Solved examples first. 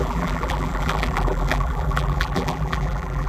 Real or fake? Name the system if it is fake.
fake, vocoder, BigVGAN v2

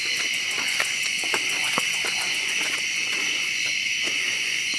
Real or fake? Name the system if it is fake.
fake, vocoder, Vocos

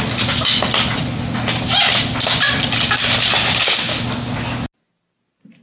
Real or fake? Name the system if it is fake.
real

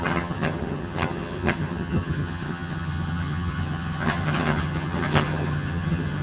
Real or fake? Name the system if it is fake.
fake, vocoder, HiFi-GAN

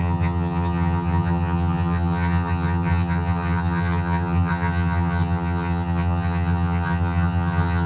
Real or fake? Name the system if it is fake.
fake, vocoder, HiFi-GAN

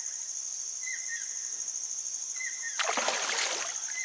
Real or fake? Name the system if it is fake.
real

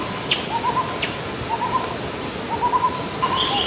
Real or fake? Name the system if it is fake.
real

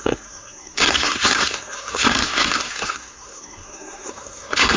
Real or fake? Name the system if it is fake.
fake, codec, SNAC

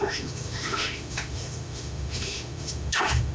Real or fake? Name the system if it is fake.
fake, autoencoder, DAC-VAE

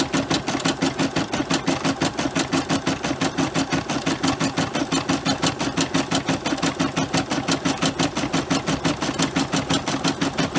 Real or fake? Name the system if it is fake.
real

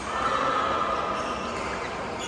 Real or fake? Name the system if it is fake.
real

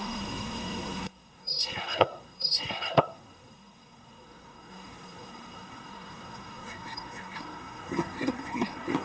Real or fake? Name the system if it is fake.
fake, codec, SNAC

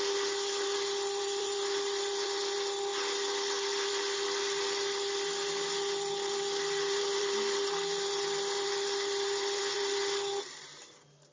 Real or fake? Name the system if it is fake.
fake, vocoder, BigVGAN v2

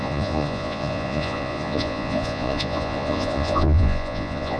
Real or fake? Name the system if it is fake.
fake, vocoder, Vocos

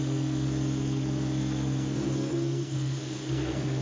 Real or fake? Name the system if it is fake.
fake, codec, SNAC